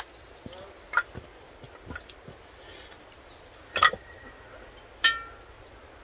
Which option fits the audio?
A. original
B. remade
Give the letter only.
A